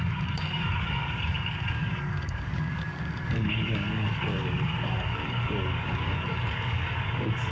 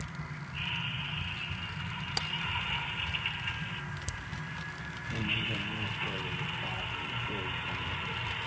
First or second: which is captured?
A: second